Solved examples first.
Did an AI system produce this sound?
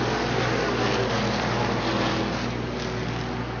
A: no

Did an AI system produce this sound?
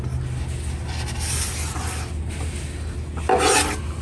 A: no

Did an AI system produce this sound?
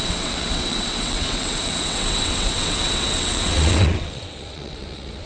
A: yes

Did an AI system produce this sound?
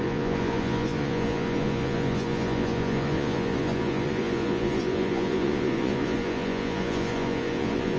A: yes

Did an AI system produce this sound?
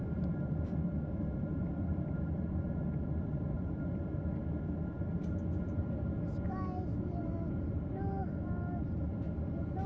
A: no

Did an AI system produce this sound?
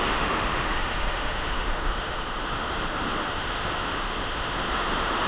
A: yes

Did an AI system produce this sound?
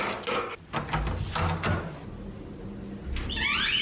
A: no